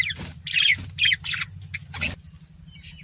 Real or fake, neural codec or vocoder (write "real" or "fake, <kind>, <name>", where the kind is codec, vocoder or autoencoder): real